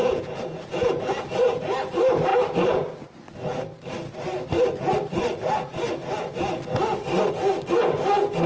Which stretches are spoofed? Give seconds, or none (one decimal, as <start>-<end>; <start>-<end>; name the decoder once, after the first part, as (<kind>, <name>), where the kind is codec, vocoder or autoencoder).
0.0-1.2 (vocoder, Vocos)